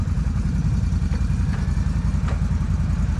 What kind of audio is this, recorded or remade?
remade